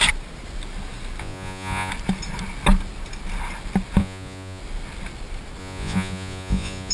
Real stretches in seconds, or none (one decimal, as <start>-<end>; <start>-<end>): 0.0-1.2; 1.9-4.0; 4.6-5.6